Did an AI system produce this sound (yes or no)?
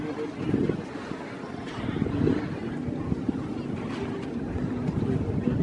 no